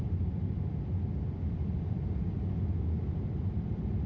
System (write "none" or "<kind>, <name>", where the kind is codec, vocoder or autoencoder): none